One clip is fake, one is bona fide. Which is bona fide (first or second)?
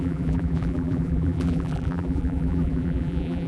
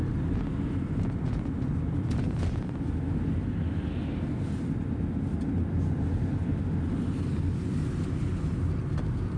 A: second